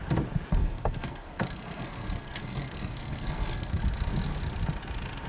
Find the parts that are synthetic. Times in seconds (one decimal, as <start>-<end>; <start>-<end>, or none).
0.6-3.8